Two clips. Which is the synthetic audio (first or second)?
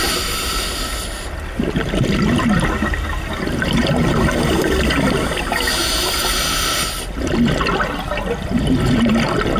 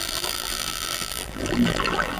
second